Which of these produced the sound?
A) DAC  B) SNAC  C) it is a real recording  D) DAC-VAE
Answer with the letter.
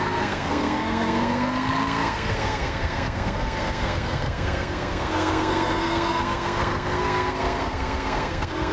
B